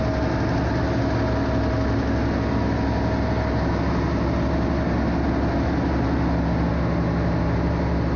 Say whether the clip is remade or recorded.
recorded